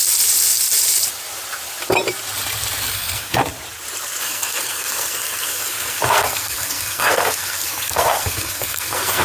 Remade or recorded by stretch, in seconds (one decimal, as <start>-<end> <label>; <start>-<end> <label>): 0.0-2.8 recorded; 2.8-3.4 remade; 3.4-4.2 recorded; 4.2-9.2 remade

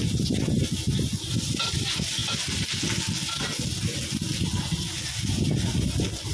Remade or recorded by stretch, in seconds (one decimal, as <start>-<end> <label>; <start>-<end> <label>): 0.0-6.3 recorded

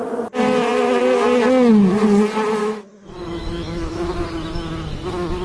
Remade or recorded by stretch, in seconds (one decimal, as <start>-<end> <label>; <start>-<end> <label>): 0.0-2.6 recorded; 2.6-4.1 remade; 4.1-5.4 recorded